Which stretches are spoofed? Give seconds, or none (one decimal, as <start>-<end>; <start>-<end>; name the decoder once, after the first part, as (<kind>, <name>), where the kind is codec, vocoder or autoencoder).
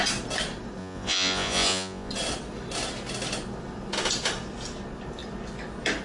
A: 0.8-2.1 (vocoder, Vocos)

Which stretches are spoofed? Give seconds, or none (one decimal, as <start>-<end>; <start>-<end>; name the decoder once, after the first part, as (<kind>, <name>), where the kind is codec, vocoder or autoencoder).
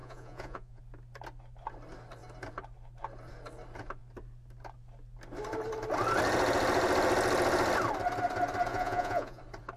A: 0.0-0.8 (vocoder, Vocos); 8.7-9.4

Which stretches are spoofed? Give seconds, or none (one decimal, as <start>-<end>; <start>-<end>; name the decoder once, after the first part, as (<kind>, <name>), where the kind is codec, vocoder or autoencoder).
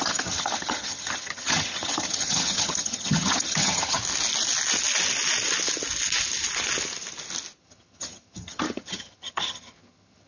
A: 0.0-4.0 (vocoder, HiFi-GAN); 7.6-10.3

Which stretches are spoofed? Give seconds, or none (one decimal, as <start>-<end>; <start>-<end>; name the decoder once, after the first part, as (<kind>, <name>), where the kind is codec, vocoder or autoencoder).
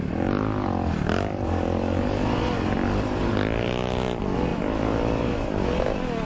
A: none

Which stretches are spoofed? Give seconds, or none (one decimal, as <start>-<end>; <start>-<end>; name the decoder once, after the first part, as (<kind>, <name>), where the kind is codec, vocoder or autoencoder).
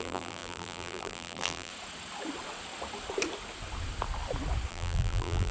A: 0.0-1.7 (vocoder, BigVGAN v2); 4.7-5.5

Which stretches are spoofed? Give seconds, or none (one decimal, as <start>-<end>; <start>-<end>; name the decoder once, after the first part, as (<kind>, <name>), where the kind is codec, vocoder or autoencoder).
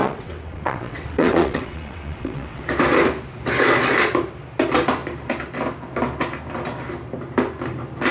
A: 0.0-2.6 (vocoder, WaveNeXt)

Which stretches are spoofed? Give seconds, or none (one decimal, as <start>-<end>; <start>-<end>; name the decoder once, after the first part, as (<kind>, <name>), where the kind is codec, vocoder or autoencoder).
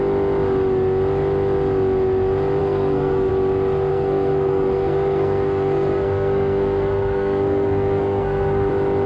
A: 2.6-3.3 (codec, SNAC); 3.9-8.7